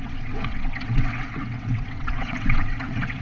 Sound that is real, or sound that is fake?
fake